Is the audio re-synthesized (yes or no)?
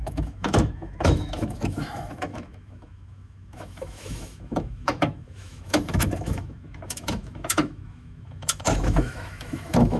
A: yes